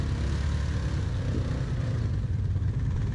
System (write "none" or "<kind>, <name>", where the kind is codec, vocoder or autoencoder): none